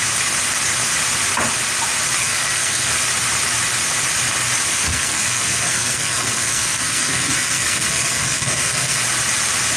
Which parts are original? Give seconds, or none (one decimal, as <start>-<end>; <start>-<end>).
0.0-2.2; 2.9-4.7; 9.0-9.8